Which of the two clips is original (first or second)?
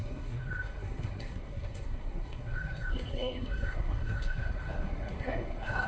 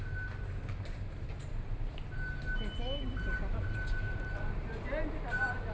second